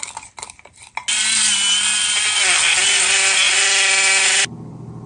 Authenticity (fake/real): real